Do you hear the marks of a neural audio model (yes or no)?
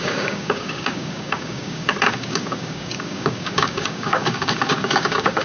yes